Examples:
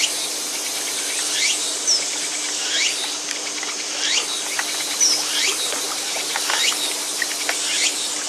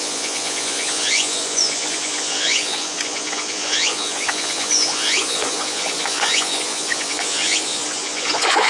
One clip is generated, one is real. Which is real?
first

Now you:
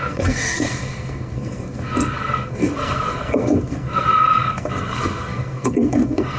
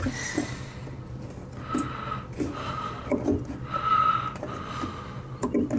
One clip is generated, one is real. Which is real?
second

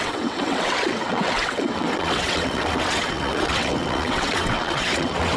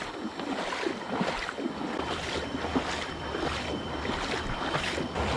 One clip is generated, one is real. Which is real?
second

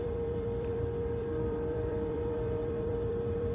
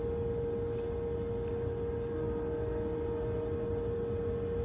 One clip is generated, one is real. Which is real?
second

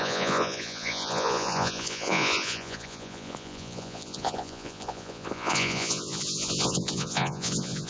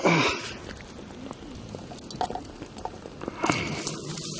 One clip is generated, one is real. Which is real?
second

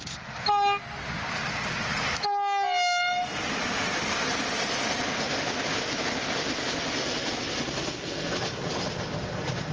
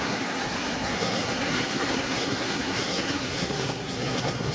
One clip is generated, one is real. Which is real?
first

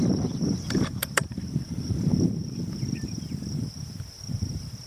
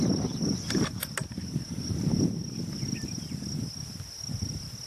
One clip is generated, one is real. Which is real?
second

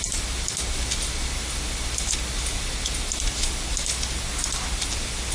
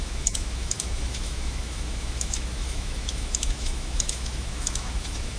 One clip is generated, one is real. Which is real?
first